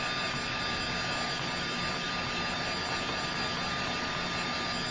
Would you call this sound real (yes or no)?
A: yes